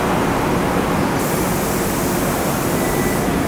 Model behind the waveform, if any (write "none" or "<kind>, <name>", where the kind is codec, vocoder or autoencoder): none